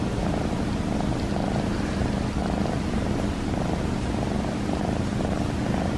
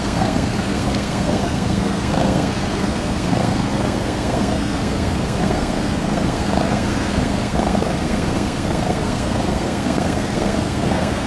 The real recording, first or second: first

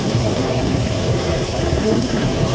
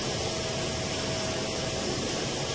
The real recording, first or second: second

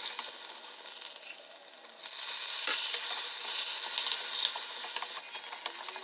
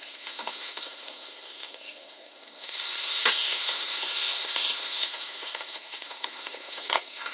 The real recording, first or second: first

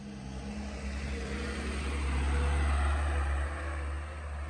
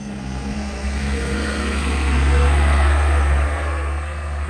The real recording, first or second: first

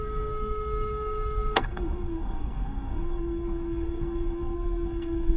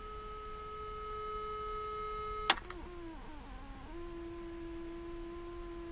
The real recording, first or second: second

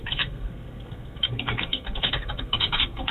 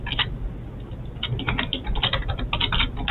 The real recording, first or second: second